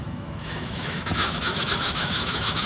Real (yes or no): no